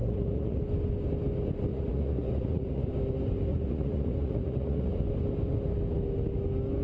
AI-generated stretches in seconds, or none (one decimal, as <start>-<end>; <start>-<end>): 0.0-0.6; 1.7-2.9; 3.5-4.9